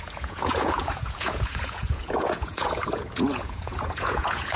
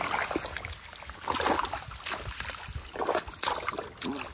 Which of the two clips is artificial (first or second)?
first